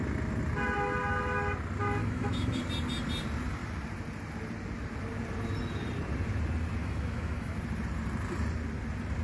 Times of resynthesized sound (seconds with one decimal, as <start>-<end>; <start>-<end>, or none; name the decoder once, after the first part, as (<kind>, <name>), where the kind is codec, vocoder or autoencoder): 2.0-2.6 (autoencoder, DAC-VAE); 6.8-7.6